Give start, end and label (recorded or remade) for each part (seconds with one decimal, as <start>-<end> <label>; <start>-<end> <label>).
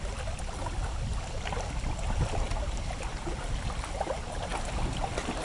0.0-5.4 recorded